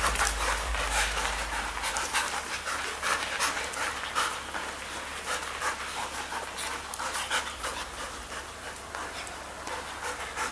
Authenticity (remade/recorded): recorded